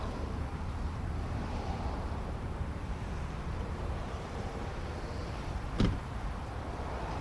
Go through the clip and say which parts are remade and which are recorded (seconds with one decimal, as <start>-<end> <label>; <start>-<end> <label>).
0.0-0.5 recorded; 0.5-4.8 remade; 4.8-5.2 recorded; 5.2-6.4 remade; 6.4-7.2 recorded